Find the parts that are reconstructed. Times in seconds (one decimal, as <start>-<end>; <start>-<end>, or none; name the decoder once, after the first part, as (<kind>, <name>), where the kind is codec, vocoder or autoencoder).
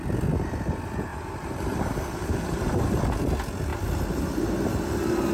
1.1-3.0 (vocoder, BigVGAN v2)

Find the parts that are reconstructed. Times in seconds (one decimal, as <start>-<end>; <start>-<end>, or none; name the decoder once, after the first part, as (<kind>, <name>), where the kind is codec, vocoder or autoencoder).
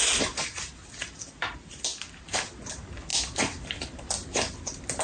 none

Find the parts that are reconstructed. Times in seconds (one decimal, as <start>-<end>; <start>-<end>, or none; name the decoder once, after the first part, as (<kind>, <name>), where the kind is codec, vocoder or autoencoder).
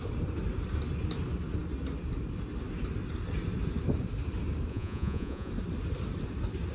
4.7-5.5 (vocoder, Vocos)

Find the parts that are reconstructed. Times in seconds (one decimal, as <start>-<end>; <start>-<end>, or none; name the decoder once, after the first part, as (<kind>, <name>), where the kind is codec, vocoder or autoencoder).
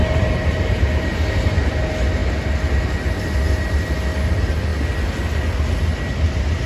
0.0-1.7 (vocoder, BigVGAN v2)